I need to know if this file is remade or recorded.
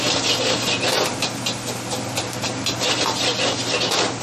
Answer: recorded